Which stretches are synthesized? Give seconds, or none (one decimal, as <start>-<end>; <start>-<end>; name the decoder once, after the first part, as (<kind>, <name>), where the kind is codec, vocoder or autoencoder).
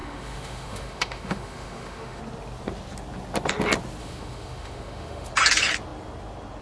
0.0-2.2 (autoencoder, DAC-VAE); 4.0-5.3